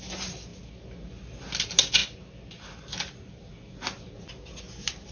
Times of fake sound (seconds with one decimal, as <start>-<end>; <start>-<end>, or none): none